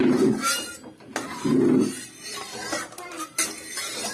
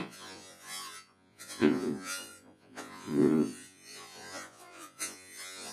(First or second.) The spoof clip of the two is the second